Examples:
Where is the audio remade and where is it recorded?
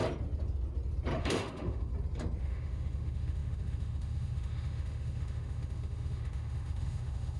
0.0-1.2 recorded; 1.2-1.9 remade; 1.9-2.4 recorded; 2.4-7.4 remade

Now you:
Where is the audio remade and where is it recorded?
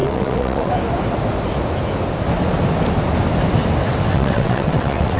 0.0-0.7 remade; 0.7-4.1 recorded; 4.1-5.2 remade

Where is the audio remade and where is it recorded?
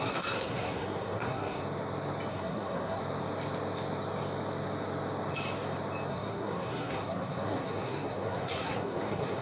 0.0-1.6 remade; 1.6-2.3 recorded; 2.3-3.0 remade; 3.0-6.1 recorded; 6.1-9.4 remade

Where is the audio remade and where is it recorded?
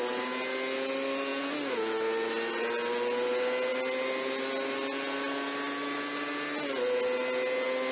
0.0-7.9 recorded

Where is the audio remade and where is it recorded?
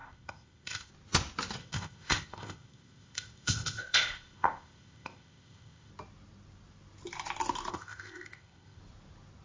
0.0-0.9 remade; 0.9-1.6 recorded; 1.6-5.9 remade; 5.9-7.7 recorded; 7.7-8.8 remade; 8.8-9.4 recorded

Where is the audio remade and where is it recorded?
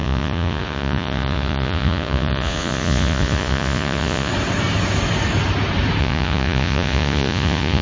0.0-4.3 remade; 4.3-6.0 recorded; 6.0-7.8 remade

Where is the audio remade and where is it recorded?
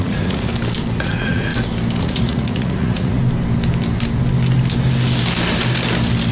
0.0-0.5 remade; 0.5-1.0 recorded; 1.0-1.5 remade; 1.5-2.0 recorded; 2.0-3.2 remade; 3.2-6.3 recorded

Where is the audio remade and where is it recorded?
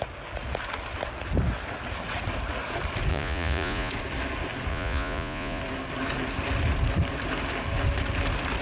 0.0-3.1 recorded; 3.1-3.9 remade; 3.9-4.7 recorded; 4.7-5.6 remade; 5.6-8.6 recorded